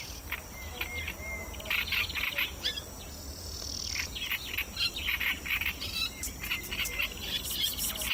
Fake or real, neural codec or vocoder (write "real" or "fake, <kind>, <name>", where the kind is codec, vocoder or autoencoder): real